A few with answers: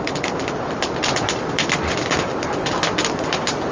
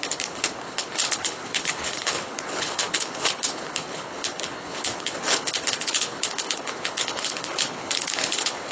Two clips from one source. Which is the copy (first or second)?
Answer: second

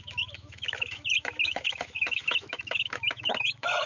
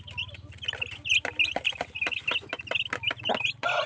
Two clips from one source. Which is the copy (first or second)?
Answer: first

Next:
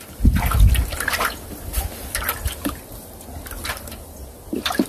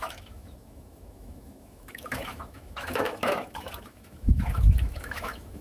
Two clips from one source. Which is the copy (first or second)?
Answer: second